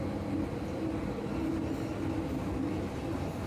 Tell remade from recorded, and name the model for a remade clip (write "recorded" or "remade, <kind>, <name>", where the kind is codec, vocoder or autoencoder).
recorded